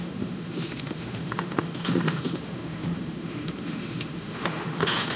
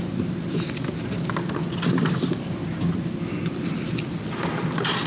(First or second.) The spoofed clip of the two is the first